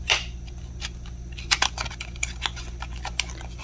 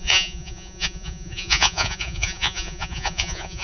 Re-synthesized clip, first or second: second